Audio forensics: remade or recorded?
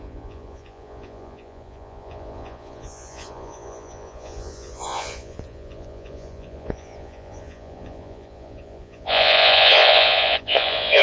remade